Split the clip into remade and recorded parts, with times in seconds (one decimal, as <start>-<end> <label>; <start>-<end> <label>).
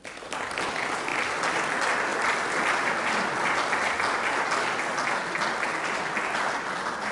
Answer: 0.0-7.1 recorded